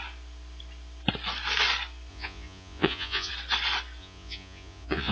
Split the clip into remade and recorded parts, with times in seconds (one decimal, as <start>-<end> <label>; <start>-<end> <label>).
0.0-2.1 recorded; 2.1-3.3 remade; 3.3-4.0 recorded; 4.0-5.1 remade